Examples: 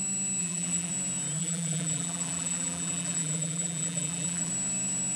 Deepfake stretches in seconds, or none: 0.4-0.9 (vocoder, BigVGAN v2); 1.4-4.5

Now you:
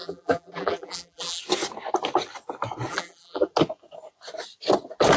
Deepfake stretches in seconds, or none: 0.0-1.4 (vocoder, BigVGAN v2); 2.9-3.5

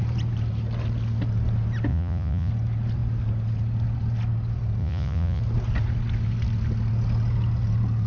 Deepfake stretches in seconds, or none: 1.9-2.5 (vocoder, Vocos); 4.8-5.4

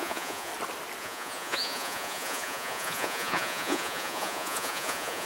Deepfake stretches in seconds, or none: 0.0-0.5 (vocoder, Vocos); 1.0-5.3

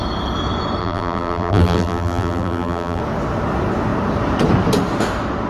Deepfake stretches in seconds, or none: 0.8-3.0 (vocoder, BigVGAN v2)

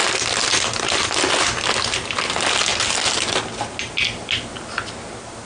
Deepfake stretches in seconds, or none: none